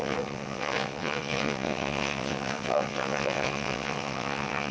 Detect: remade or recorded remade